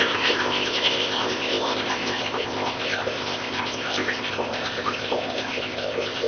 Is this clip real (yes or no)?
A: no